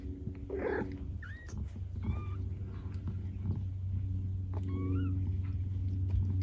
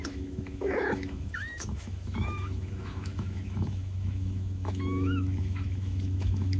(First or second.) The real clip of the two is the first